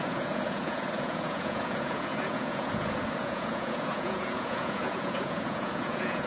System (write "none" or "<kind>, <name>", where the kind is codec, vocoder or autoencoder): vocoder, Vocos